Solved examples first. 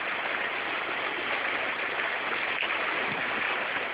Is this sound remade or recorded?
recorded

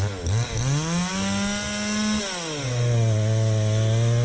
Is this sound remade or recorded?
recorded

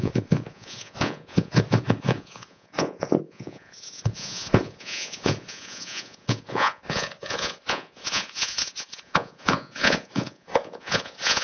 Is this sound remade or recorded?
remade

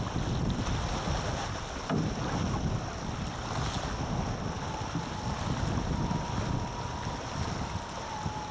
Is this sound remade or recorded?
recorded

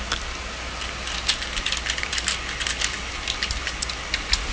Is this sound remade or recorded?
recorded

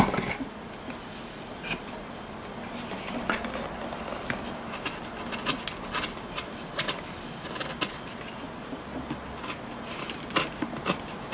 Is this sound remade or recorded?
recorded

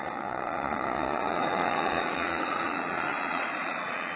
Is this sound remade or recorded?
remade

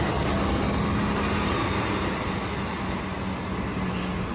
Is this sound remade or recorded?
recorded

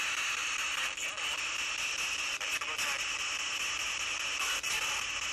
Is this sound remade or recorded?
recorded